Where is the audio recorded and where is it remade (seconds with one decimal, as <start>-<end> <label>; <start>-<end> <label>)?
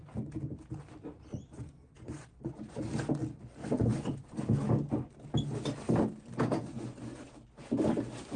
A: 0.0-1.3 recorded; 1.3-2.9 remade; 2.9-3.6 recorded; 3.6-4.7 remade; 4.7-6.7 recorded; 6.7-7.3 remade; 7.3-8.4 recorded